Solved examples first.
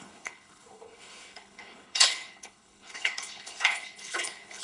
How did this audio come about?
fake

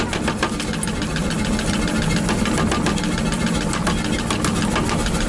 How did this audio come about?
real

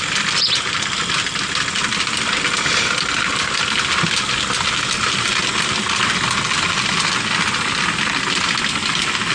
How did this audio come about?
real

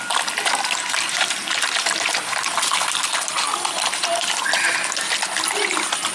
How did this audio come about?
real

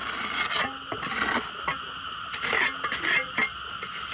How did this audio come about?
real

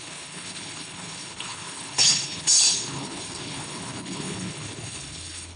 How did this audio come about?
fake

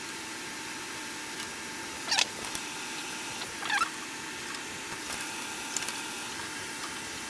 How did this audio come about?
real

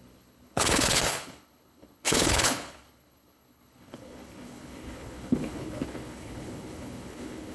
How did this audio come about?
fake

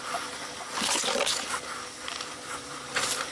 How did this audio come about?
real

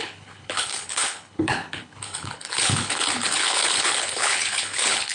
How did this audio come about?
fake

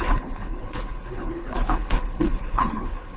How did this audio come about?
fake